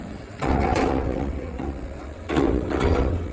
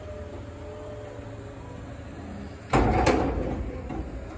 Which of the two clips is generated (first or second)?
first